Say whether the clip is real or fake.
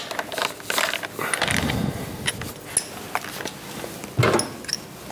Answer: real